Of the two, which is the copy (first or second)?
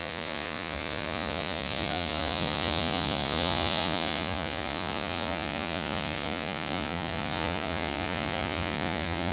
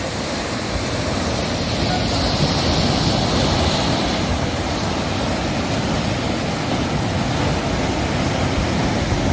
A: first